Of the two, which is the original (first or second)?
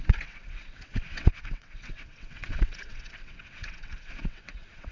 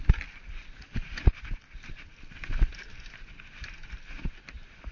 second